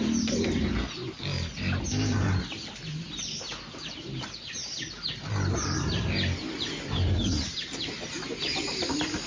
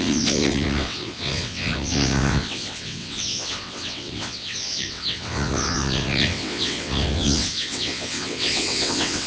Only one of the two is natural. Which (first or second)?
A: first